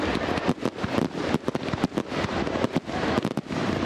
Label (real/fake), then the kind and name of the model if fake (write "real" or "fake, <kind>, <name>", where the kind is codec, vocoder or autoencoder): real